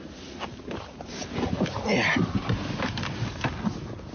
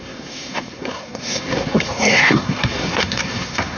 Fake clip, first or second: second